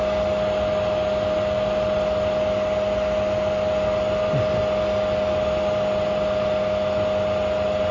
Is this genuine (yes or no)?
yes